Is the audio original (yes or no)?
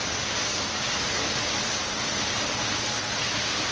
yes